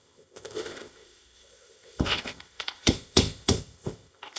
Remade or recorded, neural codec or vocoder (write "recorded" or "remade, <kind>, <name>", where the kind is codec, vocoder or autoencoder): remade, codec, ZipCodec